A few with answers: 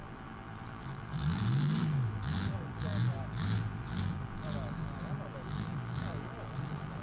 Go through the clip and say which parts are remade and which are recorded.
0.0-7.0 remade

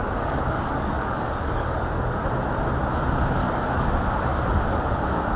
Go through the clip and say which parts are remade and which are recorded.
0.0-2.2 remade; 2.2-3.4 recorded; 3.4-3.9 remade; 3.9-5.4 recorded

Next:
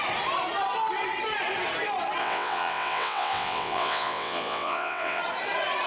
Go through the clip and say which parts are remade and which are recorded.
0.0-2.2 recorded; 2.2-5.2 remade; 5.2-5.9 recorded

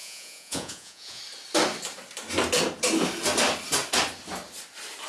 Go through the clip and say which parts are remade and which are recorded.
0.0-1.2 remade; 1.2-5.1 recorded

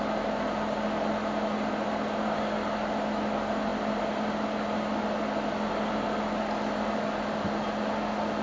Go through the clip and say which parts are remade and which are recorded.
0.0-8.4 recorded

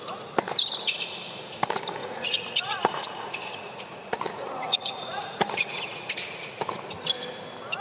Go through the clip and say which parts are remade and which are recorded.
0.0-2.0 recorded; 2.0-6.7 remade; 6.7-7.8 recorded

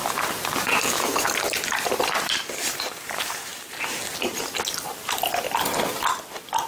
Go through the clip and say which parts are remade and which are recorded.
0.0-3.8 remade; 3.8-6.7 recorded